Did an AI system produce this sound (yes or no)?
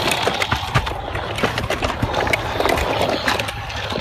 no